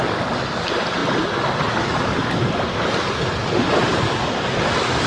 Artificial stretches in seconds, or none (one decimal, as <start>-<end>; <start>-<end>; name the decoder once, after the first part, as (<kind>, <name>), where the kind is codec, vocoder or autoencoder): none